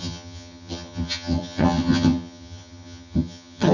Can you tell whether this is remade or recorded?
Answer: remade